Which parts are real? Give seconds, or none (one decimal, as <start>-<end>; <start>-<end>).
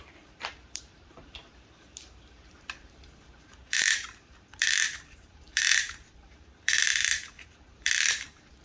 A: none